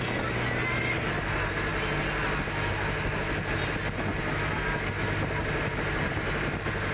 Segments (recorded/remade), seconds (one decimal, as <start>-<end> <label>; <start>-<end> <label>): 0.0-6.9 recorded